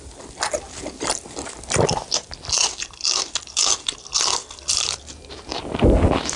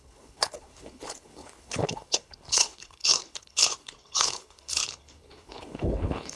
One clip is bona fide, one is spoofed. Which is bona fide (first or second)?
first